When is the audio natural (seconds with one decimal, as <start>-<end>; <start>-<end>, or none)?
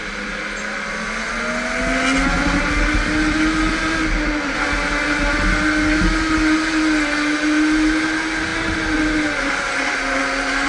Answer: 0.0-10.7